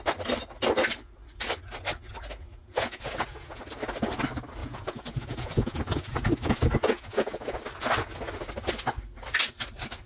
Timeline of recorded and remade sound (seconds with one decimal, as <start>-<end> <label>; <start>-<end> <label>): 0.0-2.5 recorded; 2.5-3.6 remade; 3.6-4.6 recorded; 4.6-7.6 remade; 7.6-10.1 recorded